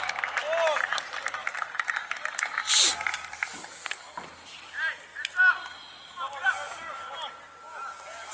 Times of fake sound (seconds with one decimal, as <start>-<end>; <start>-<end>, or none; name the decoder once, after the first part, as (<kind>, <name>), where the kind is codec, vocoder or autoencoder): 1.4-2.5 (vocoder, BigVGAN v2); 3.1-4.2

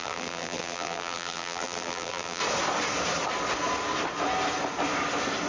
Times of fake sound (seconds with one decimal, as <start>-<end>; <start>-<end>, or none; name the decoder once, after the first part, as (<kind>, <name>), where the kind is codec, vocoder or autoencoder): 0.0-2.4 (vocoder, BigVGAN v2)

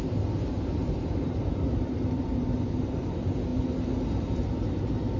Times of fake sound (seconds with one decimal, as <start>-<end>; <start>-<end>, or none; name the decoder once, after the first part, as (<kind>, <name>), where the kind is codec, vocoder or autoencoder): 0.8-3.1 (vocoder, BigVGAN v2)

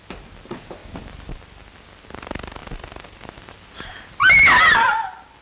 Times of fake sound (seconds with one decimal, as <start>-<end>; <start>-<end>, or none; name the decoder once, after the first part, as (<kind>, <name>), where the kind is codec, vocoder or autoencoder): 0.8-1.6 (vocoder, BigVGAN v2); 2.6-3.5

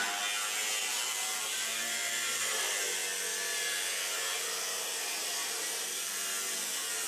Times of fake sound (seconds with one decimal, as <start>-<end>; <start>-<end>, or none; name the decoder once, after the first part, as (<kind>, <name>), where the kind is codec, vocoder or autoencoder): 0.8-2.6 (vocoder, BigVGAN v2); 5.4-6.3